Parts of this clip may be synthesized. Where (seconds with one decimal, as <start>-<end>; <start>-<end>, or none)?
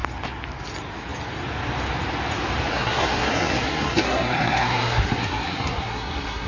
2.7-6.5